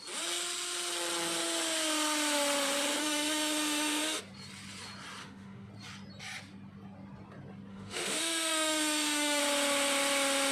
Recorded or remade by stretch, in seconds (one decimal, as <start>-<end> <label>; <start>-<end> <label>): 0.0-3.0 recorded; 3.0-4.2 remade; 4.2-5.2 recorded; 5.2-5.7 remade; 5.7-7.7 recorded; 7.7-9.4 remade; 9.4-10.5 recorded